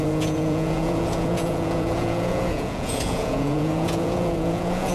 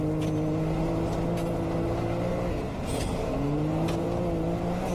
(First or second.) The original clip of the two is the second